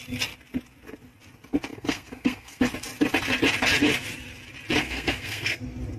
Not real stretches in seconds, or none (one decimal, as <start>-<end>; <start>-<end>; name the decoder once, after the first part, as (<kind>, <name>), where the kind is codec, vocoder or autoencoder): 1.7-2.6 (codec, SNAC); 4.8-5.6